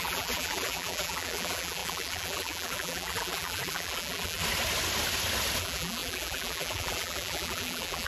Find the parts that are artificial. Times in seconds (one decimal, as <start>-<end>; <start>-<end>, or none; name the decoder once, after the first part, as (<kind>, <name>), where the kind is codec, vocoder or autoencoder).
0.0-4.4 (vocoder, BigVGAN v2); 5.6-8.1